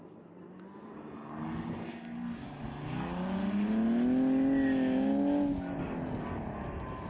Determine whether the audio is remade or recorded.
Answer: recorded